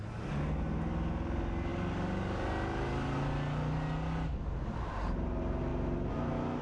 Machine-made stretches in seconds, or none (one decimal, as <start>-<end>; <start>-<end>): none